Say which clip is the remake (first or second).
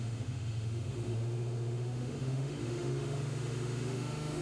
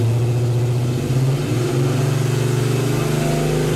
first